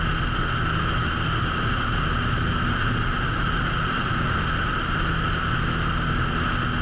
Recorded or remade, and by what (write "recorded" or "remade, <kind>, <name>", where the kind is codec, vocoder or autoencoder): recorded